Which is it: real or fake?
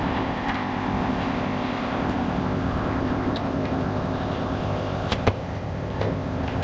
fake